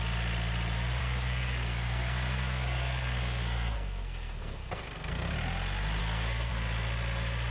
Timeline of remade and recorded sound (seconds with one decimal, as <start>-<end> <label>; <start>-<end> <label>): 0.0-1.0 recorded; 1.0-5.3 remade; 5.3-6.0 recorded; 6.0-6.5 remade; 6.5-7.5 recorded